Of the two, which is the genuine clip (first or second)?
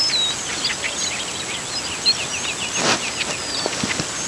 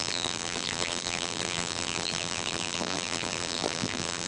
first